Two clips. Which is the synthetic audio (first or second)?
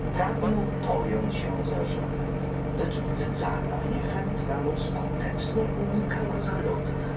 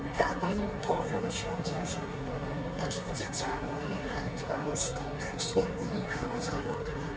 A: second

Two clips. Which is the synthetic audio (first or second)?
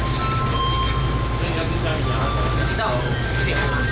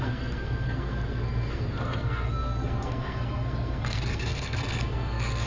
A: second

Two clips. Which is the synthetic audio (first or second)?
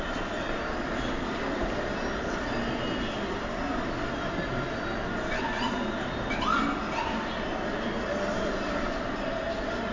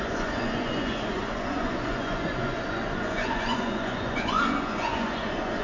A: second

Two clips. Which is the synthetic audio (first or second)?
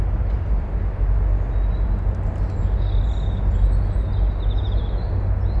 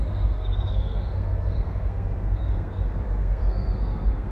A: second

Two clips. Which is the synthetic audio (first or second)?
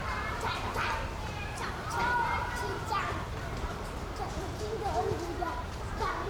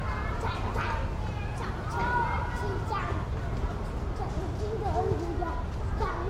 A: first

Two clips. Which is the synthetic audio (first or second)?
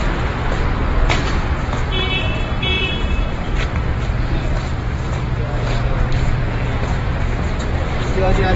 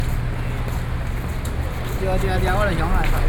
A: first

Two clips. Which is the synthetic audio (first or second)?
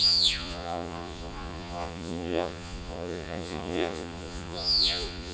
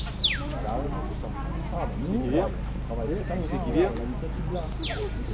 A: first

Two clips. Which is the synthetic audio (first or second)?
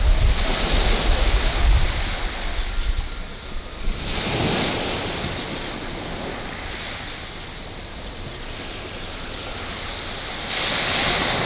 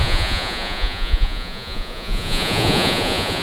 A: second